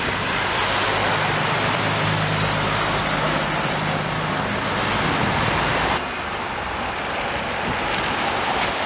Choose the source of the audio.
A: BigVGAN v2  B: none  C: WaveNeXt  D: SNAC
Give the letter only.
B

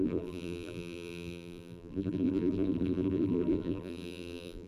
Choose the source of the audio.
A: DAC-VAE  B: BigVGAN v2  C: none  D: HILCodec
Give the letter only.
B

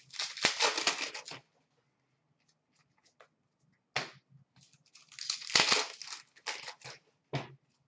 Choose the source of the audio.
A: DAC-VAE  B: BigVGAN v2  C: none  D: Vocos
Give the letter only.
C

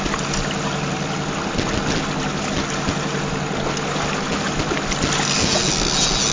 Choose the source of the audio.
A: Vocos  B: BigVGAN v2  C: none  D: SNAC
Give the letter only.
C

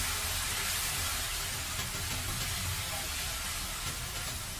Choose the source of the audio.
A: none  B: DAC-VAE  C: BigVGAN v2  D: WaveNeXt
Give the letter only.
A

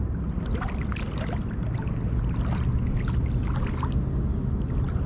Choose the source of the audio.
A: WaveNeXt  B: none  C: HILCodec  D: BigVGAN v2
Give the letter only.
B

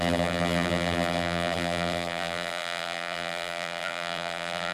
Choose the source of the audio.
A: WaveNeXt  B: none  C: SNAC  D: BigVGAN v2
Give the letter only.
D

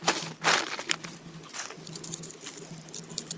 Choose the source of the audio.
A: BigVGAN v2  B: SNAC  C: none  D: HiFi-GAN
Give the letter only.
A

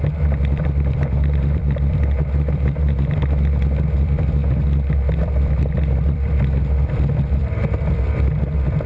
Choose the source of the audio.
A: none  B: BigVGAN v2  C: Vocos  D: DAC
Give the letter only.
B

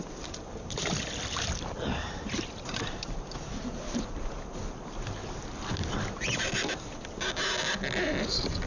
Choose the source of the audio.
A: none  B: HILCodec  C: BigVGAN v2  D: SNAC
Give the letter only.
A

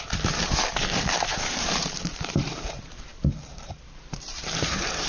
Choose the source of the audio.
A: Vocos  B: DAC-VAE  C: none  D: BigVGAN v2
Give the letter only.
D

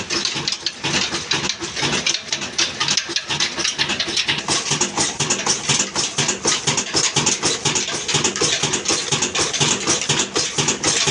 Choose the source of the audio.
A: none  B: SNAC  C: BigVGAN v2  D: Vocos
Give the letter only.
A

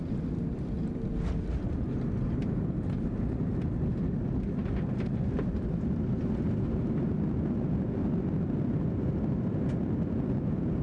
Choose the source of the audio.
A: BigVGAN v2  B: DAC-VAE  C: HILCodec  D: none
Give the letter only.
D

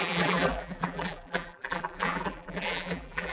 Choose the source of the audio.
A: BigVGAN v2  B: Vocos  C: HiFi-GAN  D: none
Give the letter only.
A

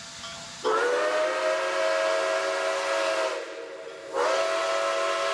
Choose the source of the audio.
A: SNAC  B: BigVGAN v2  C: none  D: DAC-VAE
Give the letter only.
C